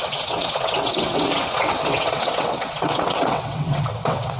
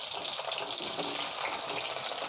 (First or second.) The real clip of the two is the second